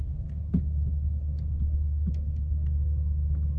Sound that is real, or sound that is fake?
real